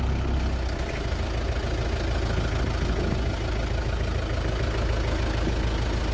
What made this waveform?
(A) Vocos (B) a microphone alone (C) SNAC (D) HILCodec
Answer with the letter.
B